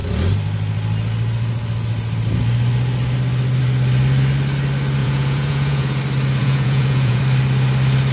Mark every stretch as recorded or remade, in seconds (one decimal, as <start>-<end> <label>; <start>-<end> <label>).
0.0-5.0 recorded; 5.0-6.0 remade; 6.0-6.4 recorded; 6.4-7.2 remade; 7.2-8.1 recorded

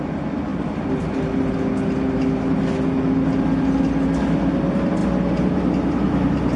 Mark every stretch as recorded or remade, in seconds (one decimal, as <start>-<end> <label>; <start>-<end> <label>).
0.0-6.6 recorded

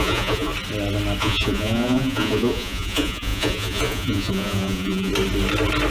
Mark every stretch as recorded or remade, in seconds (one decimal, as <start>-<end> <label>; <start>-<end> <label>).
0.0-0.5 remade; 0.5-1.2 recorded; 1.2-5.1 remade; 5.1-5.9 recorded

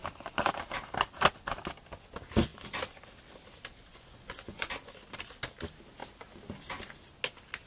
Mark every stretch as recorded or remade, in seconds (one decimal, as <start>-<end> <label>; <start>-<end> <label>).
0.0-3.9 recorded; 3.9-4.7 remade; 4.7-7.7 recorded

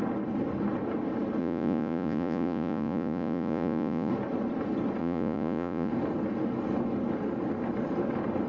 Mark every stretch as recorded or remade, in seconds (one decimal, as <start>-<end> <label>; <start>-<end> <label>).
0.0-1.4 recorded; 1.4-4.1 remade; 4.1-5.0 recorded; 5.0-5.9 remade; 5.9-8.5 recorded

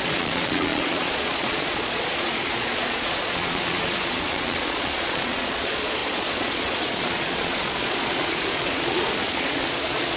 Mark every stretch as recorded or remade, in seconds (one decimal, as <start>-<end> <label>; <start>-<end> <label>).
0.0-10.2 remade